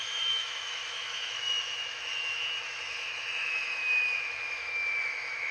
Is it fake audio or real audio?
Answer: fake